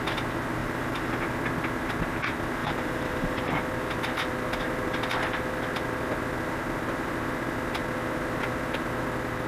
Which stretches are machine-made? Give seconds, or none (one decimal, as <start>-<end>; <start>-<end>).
0.6-1.3; 2.6-3.6